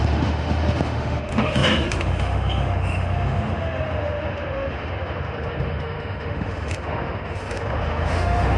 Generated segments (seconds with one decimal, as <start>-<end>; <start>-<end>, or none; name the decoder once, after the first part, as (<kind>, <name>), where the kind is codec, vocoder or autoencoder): 0.0-8.6 (autoencoder, DAC-VAE)